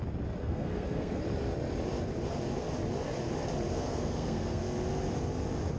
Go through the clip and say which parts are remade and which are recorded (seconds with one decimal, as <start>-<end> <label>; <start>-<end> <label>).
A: 0.0-0.4 recorded; 0.4-1.2 remade; 1.2-3.7 recorded; 3.7-4.6 remade; 4.6-5.8 recorded